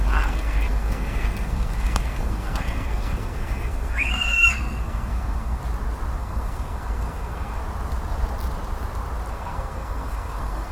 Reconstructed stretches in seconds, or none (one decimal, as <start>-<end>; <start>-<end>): 0.0-5.6; 6.2-7.6; 9.3-10.7